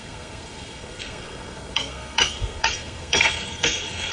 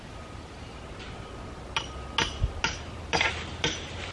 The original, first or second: second